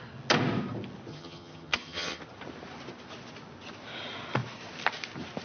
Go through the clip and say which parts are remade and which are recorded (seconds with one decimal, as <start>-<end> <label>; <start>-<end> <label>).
0.0-1.1 recorded; 1.1-2.2 remade; 2.2-5.4 recorded